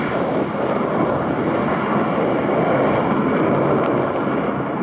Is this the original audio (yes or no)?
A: yes